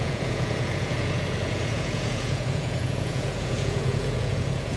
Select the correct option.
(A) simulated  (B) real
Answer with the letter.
A